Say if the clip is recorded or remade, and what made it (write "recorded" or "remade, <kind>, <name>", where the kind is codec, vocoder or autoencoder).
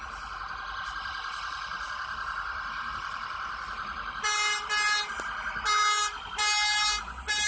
recorded